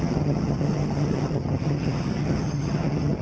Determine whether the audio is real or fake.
fake